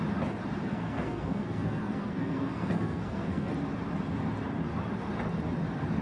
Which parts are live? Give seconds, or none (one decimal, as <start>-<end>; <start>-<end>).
0.0-0.7; 3.5-6.0